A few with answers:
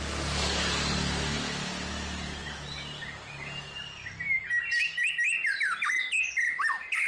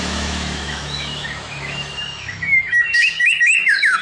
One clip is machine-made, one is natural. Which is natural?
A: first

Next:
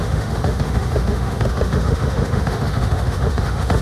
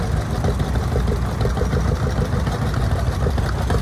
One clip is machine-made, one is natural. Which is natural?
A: second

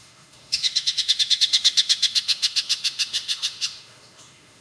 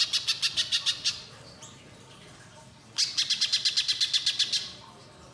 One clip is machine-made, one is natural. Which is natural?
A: second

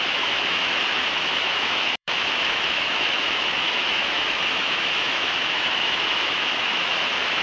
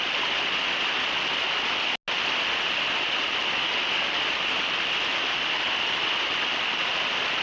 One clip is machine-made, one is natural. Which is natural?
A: second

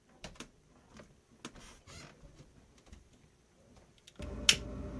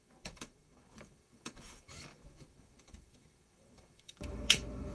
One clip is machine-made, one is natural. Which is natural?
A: first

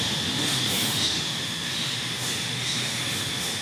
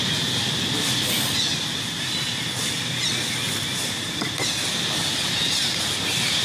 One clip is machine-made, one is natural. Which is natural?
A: second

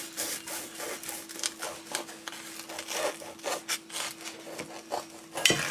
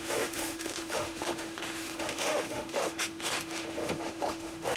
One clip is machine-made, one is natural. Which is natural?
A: first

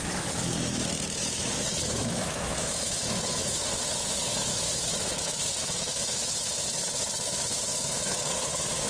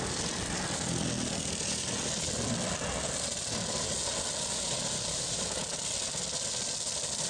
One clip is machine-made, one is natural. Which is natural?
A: second